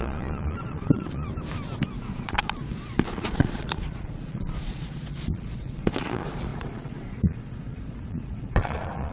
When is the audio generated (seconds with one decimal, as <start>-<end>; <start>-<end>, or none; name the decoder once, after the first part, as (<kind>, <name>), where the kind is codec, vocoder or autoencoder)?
0.0-1.3 (vocoder, Vocos); 1.9-9.1